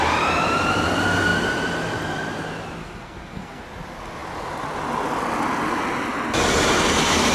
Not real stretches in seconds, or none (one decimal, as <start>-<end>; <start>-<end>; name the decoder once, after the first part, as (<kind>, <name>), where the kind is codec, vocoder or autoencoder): 2.8-3.6 (codec, SNAC)